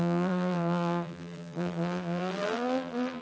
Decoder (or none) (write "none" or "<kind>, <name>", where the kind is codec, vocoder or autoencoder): vocoder, BigVGAN v2